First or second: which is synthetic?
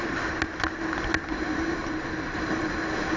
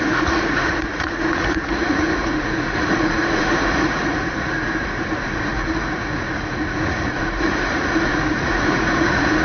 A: second